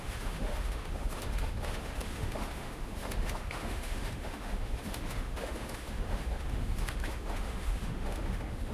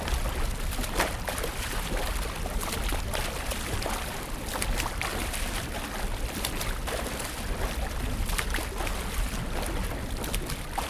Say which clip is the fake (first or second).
first